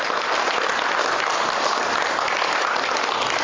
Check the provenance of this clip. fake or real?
real